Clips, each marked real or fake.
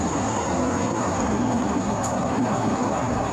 fake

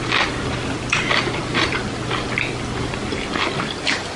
real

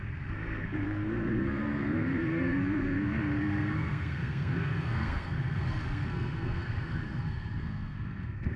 fake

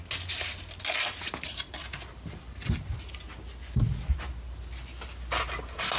real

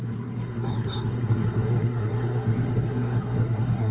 fake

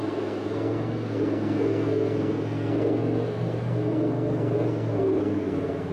fake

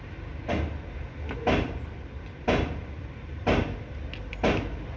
real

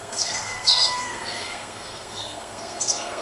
fake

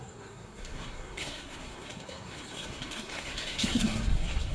fake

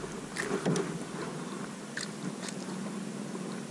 real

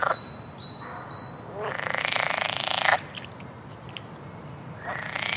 real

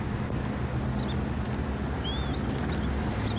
real